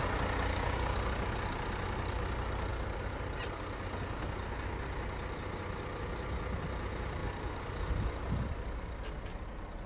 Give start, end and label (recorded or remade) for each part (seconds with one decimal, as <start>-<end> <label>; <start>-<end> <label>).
0.0-0.5 recorded; 0.5-1.1 remade; 1.1-9.9 recorded